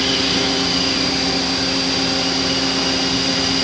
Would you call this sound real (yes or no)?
yes